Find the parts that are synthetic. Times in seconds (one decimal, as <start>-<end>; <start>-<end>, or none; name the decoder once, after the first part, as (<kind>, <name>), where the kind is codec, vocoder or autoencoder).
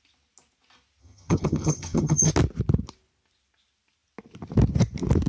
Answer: 1.0-2.3 (vocoder, HiFi-GAN)